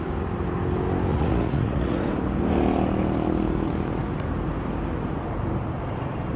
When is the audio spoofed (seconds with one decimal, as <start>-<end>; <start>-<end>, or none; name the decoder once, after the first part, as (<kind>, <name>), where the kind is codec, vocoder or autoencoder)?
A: 1.1-2.0 (vocoder, Vocos)